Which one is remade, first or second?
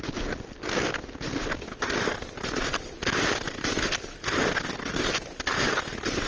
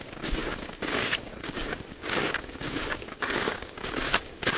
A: second